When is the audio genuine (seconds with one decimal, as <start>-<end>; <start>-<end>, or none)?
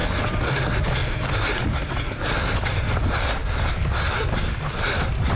0.0-5.4